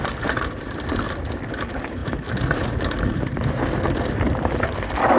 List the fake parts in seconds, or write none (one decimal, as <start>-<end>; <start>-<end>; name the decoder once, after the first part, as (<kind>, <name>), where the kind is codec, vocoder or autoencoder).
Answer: none